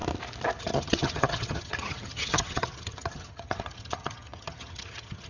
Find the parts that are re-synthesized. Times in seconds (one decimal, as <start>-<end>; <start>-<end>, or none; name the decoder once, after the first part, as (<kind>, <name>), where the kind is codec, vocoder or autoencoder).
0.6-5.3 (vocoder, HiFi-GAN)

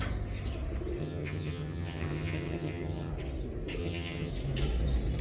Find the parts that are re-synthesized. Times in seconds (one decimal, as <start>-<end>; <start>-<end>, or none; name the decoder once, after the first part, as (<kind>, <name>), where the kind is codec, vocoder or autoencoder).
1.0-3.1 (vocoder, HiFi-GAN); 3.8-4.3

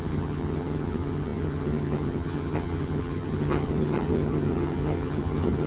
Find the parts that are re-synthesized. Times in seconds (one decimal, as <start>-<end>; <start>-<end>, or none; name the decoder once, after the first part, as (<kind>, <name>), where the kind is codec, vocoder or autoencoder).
0.0-5.7 (vocoder, HiFi-GAN)

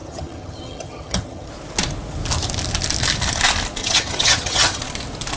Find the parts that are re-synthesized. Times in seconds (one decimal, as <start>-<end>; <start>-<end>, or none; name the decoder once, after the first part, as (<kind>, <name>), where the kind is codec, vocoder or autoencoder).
0.0-1.5 (vocoder, HiFi-GAN); 3.8-4.8

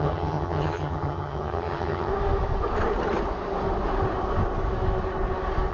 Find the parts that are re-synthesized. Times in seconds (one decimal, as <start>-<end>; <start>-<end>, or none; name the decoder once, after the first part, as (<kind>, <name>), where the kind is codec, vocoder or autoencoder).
0.0-2.1 (vocoder, HiFi-GAN)

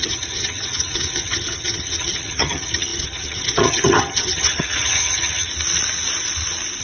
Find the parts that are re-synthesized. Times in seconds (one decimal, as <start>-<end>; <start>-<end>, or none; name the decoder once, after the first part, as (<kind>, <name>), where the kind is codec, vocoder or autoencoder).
0.0-5.5 (vocoder, HiFi-GAN)

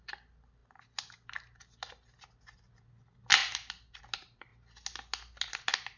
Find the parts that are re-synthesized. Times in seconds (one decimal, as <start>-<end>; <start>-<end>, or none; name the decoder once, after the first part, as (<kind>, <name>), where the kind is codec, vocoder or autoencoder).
none

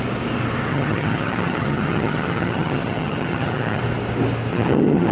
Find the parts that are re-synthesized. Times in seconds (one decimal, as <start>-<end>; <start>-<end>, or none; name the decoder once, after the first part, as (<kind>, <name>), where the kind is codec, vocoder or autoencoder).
0.7-3.8 (vocoder, HiFi-GAN); 4.5-5.1